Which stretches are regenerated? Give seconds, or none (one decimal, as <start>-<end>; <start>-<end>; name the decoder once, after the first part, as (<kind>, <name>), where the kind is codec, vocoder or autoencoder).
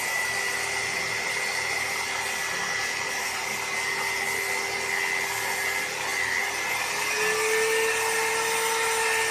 none